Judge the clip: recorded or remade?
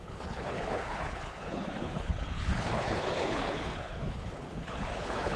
remade